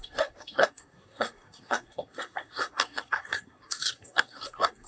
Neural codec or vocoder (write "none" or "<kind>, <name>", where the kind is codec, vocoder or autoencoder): codec, SNAC